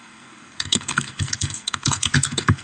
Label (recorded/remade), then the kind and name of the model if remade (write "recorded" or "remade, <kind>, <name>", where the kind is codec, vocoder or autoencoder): remade, codec, SNAC